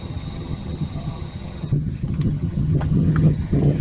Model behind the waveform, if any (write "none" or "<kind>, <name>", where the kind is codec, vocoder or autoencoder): vocoder, HiFi-GAN